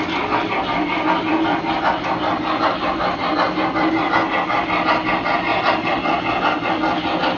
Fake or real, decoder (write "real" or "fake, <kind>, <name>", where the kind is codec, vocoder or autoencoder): real